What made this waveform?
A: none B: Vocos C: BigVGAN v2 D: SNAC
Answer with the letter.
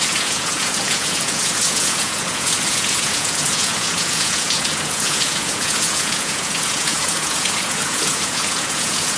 B